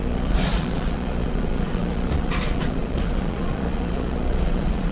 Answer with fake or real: fake